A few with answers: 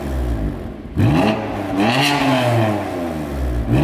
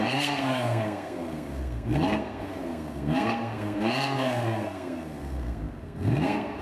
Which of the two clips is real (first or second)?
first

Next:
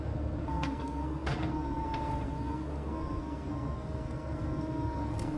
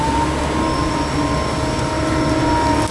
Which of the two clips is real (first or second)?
second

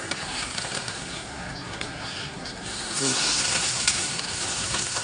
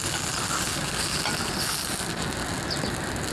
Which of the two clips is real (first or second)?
second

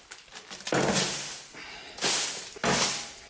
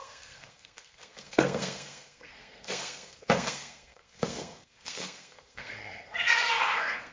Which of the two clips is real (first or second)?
first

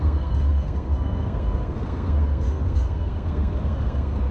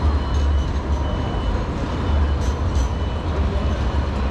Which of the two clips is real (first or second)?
second